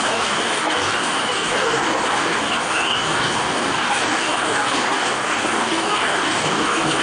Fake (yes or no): yes